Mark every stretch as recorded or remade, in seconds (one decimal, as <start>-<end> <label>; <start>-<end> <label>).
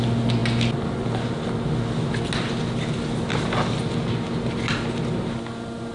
0.0-5.9 recorded